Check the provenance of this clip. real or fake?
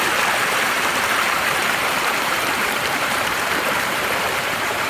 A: fake